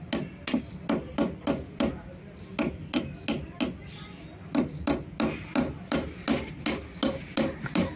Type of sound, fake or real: real